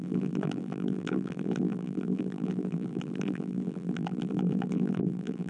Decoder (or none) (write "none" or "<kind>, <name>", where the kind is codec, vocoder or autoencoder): vocoder, BigVGAN v2